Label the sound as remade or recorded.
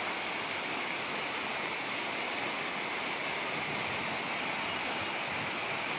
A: recorded